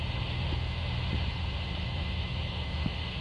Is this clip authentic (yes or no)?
yes